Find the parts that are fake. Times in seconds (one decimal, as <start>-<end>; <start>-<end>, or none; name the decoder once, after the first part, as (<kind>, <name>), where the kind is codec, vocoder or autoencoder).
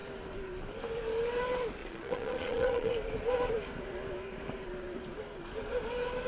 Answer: 1.8-2.9 (vocoder, Vocos)